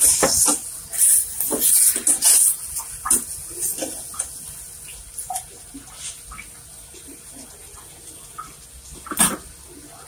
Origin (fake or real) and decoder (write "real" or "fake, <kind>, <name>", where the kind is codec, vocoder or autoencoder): real